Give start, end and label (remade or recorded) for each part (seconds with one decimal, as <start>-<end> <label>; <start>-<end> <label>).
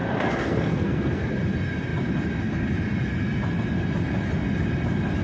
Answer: 0.0-1.3 remade; 1.3-5.2 recorded